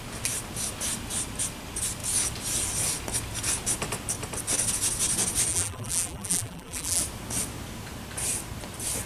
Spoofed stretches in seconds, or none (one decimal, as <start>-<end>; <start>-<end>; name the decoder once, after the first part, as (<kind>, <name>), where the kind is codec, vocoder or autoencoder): 5.5-7.0 (vocoder, BigVGAN v2)